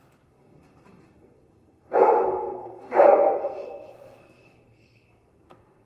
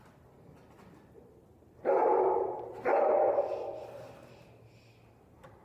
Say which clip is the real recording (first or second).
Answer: second